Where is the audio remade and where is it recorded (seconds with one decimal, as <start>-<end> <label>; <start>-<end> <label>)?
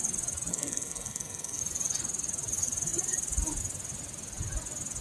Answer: 0.0-0.5 recorded; 0.5-1.6 remade; 1.6-5.0 recorded